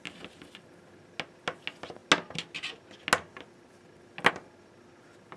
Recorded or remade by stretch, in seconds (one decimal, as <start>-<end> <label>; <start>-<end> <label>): 0.0-5.4 recorded